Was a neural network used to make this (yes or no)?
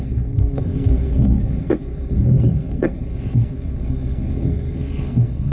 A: yes